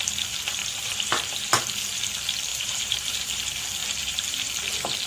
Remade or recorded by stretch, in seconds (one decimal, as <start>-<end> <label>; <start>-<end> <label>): 0.0-0.6 recorded; 0.6-1.5 remade; 1.5-2.5 recorded; 2.5-3.4 remade; 3.4-3.8 recorded; 3.8-4.5 remade; 4.5-5.1 recorded